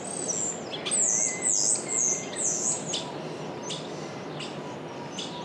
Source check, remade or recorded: recorded